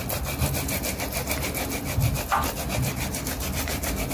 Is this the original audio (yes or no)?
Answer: yes